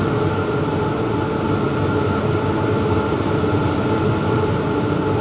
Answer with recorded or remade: recorded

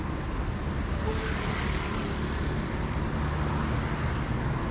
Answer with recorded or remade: recorded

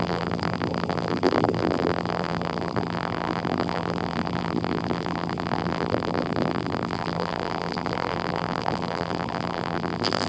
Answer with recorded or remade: remade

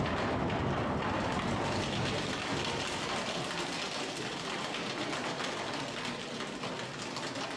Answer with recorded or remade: recorded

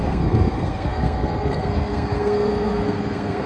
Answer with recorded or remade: remade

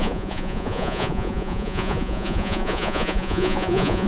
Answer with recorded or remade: remade